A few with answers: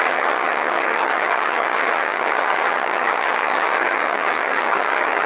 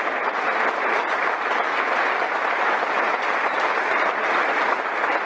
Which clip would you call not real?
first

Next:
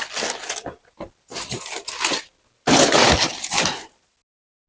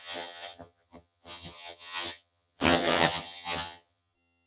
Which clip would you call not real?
second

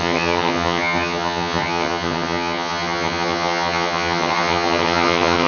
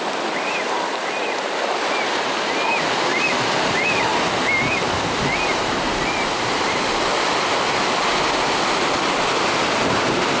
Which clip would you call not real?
first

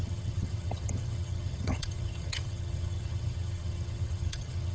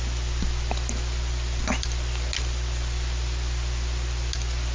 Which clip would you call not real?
first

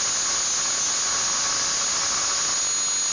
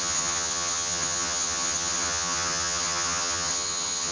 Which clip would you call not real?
second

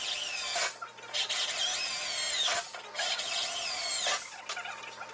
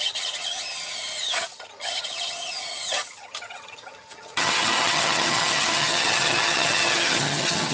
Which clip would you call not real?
second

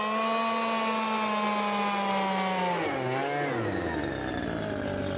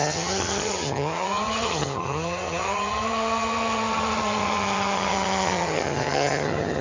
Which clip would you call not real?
second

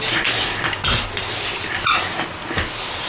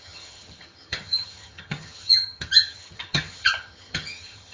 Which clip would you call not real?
second